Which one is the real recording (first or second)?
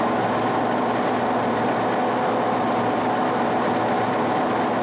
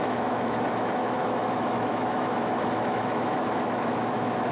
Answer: first